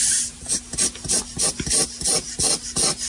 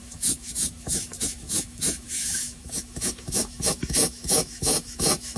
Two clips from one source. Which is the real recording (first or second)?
first